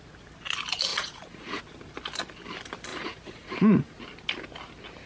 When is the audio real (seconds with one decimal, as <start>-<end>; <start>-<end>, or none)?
0.0-0.9; 1.6-2.9; 4.0-5.1